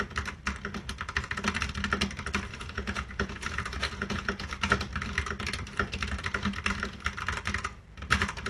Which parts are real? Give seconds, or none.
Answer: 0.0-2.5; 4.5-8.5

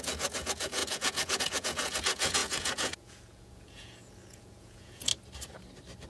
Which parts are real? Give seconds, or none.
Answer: 5.1-6.1

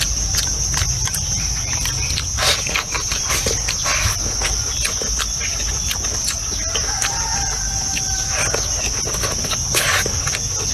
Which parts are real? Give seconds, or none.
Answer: 0.0-2.5; 3.2-10.7

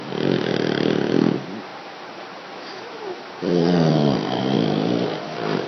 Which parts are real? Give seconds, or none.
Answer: 0.0-5.7